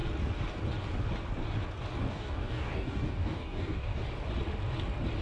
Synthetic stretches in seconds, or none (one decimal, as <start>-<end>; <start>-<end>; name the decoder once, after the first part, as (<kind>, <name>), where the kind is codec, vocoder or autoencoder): 2.1-4.0 (codec, DAC)